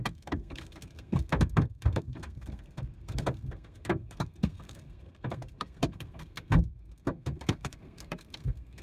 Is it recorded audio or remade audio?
remade